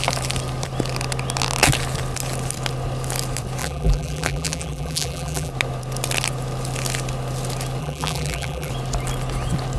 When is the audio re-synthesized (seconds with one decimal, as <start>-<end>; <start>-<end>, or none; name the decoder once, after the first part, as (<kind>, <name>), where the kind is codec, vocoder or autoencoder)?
3.6-5.5 (vocoder, BigVGAN v2); 7.8-8.7

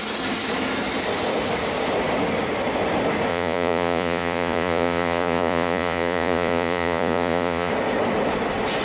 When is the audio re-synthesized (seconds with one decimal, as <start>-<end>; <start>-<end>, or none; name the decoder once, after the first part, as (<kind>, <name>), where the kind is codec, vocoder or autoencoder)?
3.3-7.7 (vocoder, Vocos)

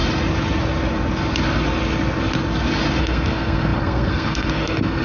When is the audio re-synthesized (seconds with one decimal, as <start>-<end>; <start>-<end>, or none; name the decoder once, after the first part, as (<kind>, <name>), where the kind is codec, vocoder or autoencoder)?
3.0-5.0 (codec, SNAC)

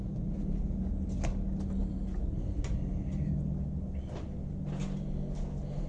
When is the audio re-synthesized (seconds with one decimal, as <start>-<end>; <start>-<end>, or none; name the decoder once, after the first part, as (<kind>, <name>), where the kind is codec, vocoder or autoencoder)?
none

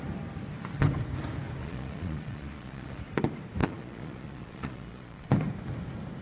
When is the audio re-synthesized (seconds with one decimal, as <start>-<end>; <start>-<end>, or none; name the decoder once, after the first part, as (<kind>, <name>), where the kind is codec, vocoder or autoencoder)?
1.6-3.0 (vocoder, Vocos); 3.6-5.3

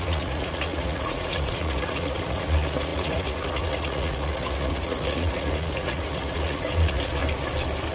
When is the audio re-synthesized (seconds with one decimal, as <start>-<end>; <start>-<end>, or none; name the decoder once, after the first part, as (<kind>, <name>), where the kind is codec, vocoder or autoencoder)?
0.0-7.2 (vocoder, Vocos)

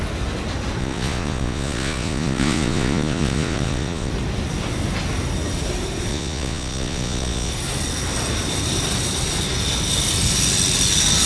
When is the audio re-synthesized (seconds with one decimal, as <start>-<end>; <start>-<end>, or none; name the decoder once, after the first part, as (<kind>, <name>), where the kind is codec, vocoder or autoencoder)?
0.8-4.1 (vocoder, Vocos); 6.1-7.5

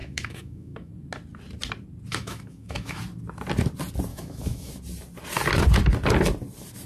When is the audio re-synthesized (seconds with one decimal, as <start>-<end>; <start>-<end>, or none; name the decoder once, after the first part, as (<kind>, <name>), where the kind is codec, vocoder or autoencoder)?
0.0-0.9 (autoencoder, DAC-VAE); 2.1-3.0; 4.1-4.7